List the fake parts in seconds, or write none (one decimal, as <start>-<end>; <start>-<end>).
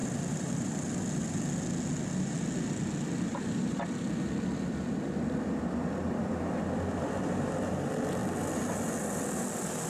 0.0-1.3; 3.3-7.7; 8.2-9.4